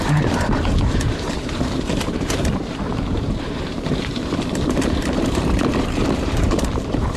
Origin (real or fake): fake